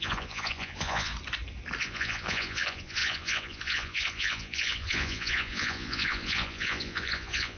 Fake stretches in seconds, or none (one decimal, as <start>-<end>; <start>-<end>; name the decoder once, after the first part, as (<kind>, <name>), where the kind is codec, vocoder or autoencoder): 0.0-1.1 (vocoder, Vocos); 1.8-7.6